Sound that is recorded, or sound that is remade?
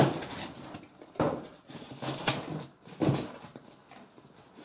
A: recorded